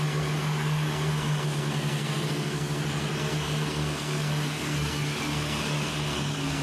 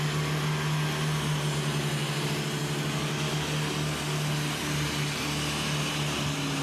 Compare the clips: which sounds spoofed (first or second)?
first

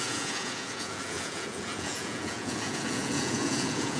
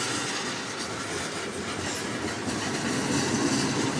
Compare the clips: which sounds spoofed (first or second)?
first